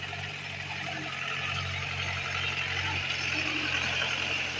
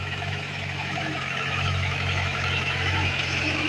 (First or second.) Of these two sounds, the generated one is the second